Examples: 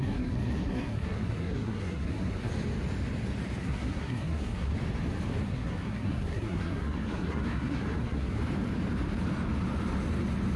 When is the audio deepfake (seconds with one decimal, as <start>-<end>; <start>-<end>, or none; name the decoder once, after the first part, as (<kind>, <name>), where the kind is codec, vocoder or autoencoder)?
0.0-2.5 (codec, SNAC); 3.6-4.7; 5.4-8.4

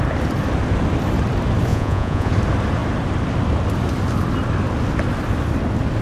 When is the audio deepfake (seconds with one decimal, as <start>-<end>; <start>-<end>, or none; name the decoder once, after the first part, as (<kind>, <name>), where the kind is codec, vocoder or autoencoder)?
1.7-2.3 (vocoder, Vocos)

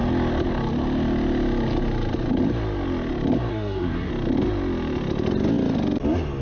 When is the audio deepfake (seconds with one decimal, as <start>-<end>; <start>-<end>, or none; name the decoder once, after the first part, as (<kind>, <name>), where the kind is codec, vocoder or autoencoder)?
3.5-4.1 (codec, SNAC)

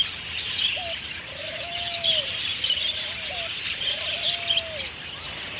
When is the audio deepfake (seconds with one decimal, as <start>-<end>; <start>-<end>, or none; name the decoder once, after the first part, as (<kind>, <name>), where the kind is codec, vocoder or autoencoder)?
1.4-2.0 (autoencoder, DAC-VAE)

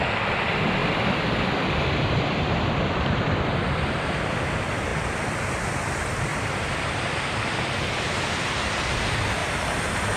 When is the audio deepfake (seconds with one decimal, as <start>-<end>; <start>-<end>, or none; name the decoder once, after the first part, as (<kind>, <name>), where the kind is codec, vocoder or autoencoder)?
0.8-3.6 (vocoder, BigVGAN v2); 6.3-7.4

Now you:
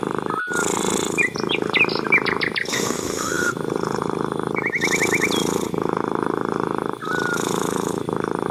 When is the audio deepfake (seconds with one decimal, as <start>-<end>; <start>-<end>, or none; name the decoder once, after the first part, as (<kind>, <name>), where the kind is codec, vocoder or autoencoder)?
2.7-3.5 (autoencoder, DAC-VAE)